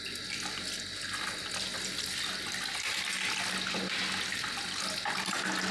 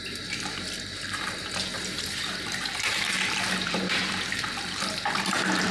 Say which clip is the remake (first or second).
second